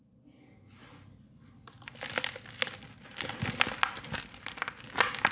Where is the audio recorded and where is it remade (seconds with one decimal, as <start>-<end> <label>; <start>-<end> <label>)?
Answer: 0.0-5.3 recorded